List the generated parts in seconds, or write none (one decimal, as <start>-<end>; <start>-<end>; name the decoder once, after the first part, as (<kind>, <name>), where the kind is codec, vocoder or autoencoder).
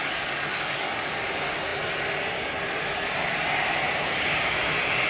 0.0-1.1 (codec, DAC)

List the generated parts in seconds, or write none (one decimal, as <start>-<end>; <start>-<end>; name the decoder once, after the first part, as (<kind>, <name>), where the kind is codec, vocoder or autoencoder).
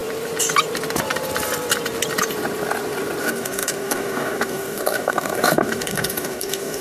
3.2-6.8 (codec, DAC)